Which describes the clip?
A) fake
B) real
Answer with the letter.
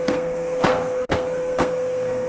A